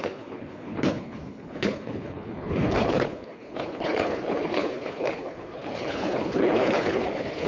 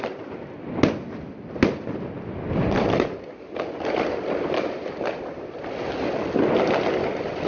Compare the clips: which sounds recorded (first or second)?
second